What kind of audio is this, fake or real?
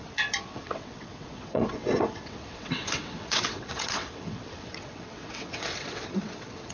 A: fake